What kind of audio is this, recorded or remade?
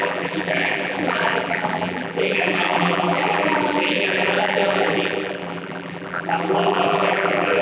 remade